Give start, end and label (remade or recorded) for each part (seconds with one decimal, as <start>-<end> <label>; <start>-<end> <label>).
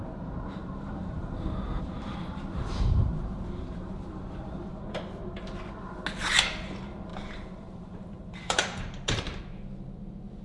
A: 0.0-0.6 recorded; 0.6-4.7 remade; 4.7-7.1 recorded; 7.1-9.4 remade; 9.4-10.4 recorded